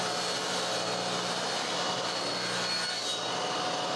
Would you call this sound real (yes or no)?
yes